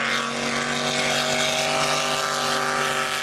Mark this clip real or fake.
real